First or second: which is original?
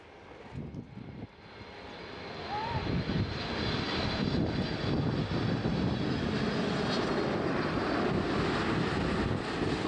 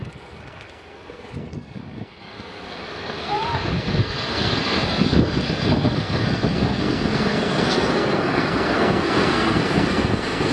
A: first